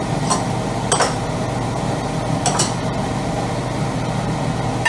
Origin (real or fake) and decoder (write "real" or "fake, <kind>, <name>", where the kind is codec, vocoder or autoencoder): real